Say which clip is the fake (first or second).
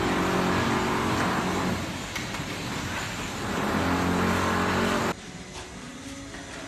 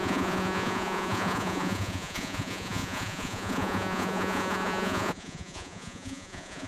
second